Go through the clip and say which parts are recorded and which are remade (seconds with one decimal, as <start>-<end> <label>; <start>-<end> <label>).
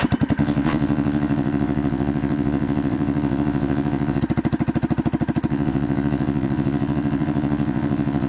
0.0-0.4 recorded; 0.4-4.2 remade; 4.2-5.5 recorded; 5.5-8.3 remade